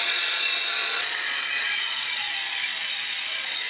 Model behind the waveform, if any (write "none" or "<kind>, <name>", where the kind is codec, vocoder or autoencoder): vocoder, Vocos